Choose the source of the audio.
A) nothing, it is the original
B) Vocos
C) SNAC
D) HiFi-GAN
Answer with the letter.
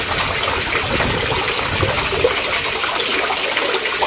A